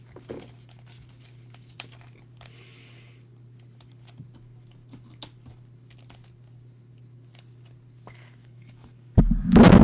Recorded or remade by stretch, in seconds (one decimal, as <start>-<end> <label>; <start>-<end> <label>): 0.0-8.4 recorded; 8.4-9.2 remade; 9.2-9.8 recorded